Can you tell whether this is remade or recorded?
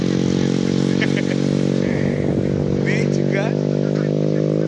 recorded